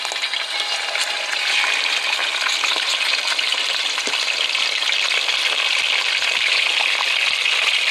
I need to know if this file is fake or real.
real